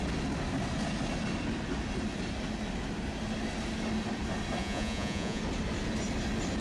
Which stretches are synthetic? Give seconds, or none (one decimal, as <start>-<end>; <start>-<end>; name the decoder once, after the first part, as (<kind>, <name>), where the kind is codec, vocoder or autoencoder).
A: 4.6-5.4 (vocoder, Vocos)